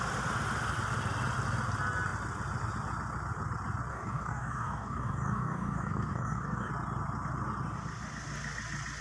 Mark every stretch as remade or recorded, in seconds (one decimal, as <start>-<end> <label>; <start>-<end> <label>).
0.0-3.9 recorded; 3.9-6.7 remade; 6.7-9.0 recorded